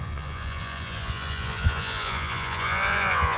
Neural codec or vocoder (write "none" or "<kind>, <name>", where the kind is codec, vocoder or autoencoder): vocoder, Vocos